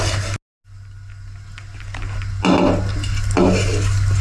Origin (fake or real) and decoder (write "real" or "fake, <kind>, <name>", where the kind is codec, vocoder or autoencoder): real